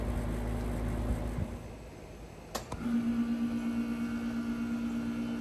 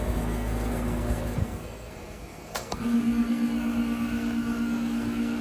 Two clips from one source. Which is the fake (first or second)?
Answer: second